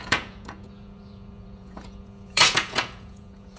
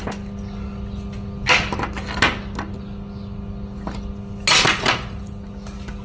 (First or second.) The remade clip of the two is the first